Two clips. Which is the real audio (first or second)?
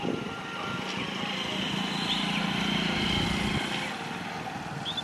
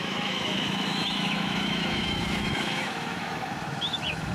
first